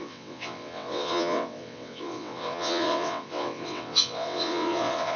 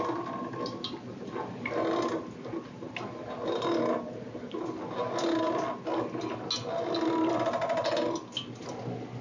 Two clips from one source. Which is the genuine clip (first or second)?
second